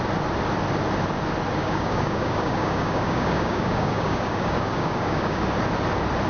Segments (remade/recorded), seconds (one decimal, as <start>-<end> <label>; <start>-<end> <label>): 0.0-1.6 recorded; 1.6-5.4 remade; 5.4-6.3 recorded